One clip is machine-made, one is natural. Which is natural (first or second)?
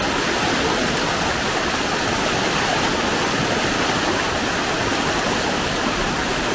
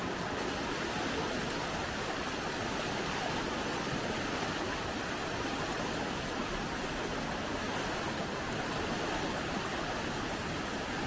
second